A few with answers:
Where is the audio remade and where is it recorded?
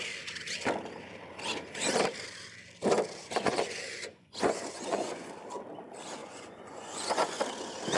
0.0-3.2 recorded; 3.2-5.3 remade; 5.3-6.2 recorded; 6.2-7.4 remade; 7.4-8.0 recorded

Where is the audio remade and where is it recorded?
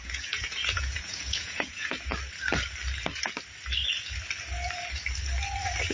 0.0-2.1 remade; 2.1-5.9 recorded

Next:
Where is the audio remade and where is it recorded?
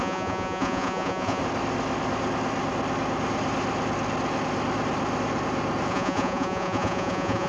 0.0-1.4 remade; 1.4-5.9 recorded; 5.9-7.5 remade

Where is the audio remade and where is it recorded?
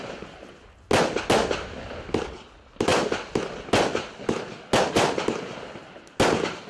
0.0-6.7 recorded